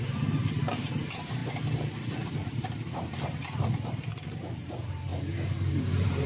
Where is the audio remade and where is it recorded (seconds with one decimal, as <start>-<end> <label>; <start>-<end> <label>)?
0.0-1.4 remade; 1.4-4.3 recorded; 4.3-5.1 remade; 5.1-5.7 recorded; 5.7-6.3 remade